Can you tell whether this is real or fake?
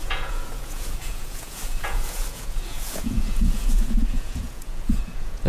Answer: fake